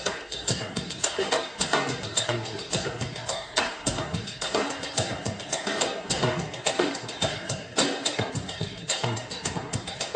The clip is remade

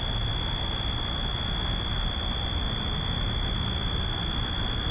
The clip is recorded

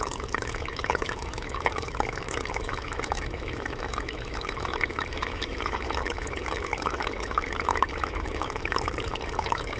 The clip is remade